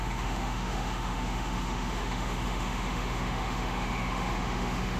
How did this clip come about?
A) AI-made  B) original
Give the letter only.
A